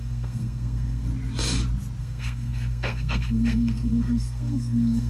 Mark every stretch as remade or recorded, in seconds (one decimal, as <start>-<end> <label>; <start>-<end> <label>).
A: 0.0-1.1 remade; 1.1-2.0 recorded; 2.0-5.1 remade